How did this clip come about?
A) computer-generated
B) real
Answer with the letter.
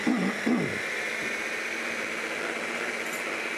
A